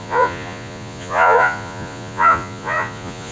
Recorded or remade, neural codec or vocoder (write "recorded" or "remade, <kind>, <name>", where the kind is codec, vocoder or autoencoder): remade, vocoder, Vocos